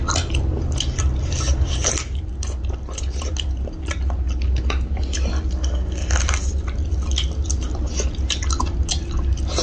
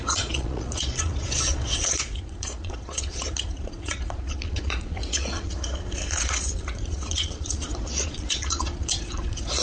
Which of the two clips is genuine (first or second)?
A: first